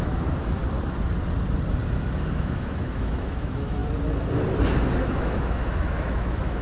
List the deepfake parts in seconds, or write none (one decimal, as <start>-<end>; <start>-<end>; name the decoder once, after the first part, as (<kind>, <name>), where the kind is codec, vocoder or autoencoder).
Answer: 0.0-0.6 (autoencoder, DAC-VAE); 2.3-3.8; 5.0-6.6